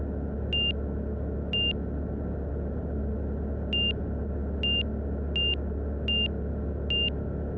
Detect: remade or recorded recorded